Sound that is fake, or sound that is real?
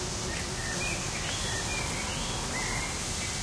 real